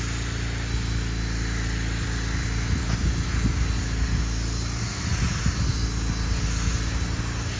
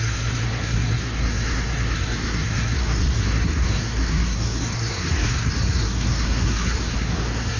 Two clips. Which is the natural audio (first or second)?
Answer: first